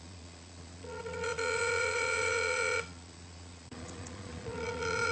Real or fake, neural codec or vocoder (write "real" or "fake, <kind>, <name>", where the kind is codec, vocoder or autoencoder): fake, vocoder, Vocos